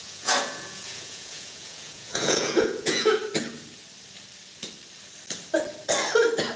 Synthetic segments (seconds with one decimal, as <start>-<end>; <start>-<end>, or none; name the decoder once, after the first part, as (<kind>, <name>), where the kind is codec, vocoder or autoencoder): 0.0-3.2 (vocoder, Vocos)